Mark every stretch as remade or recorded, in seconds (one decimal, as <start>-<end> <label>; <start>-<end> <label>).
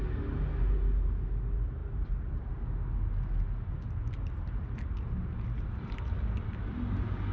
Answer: 0.0-7.3 recorded